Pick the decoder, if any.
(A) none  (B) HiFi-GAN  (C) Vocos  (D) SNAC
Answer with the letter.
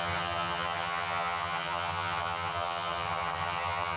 B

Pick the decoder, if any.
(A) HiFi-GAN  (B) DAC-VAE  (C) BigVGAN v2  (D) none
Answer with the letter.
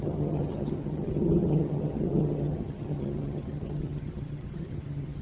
A